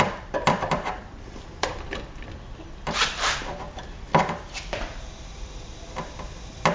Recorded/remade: remade